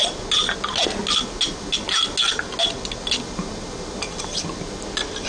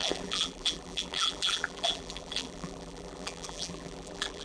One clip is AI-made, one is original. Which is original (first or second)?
first